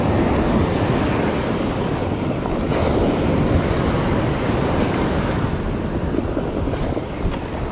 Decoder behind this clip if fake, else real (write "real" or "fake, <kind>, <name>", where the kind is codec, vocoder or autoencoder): real